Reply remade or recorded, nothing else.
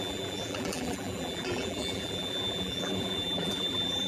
remade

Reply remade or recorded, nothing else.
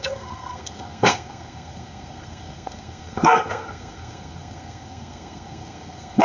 remade